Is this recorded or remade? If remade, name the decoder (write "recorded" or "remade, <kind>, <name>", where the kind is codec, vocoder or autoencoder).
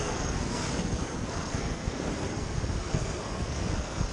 remade, codec, SNAC